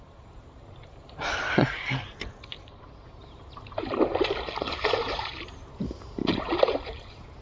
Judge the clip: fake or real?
fake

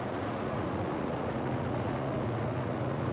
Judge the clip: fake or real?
fake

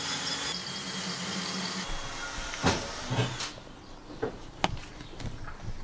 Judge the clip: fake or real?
real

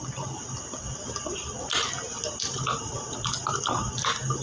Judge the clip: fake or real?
real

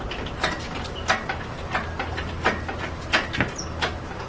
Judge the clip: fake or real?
real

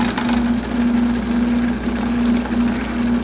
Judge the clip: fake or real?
real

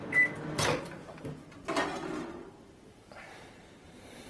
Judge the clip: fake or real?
fake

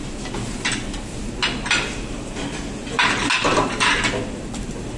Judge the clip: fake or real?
real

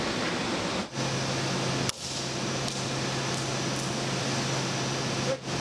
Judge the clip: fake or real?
real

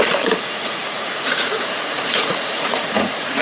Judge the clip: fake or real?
fake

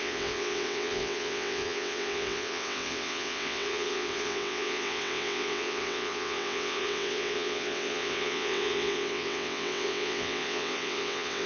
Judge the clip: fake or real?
fake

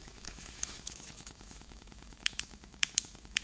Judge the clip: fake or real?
fake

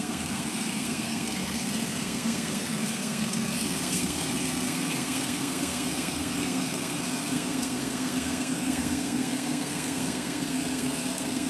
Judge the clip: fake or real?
fake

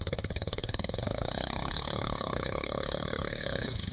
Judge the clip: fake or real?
fake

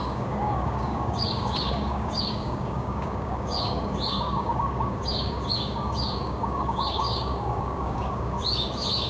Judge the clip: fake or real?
fake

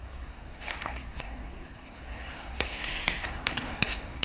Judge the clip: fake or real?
fake